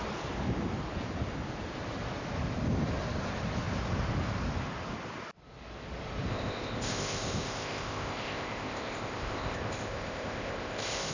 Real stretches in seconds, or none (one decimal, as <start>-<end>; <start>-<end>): 0.0-6.3